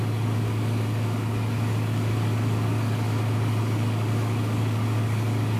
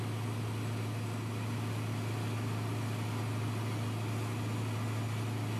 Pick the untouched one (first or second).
second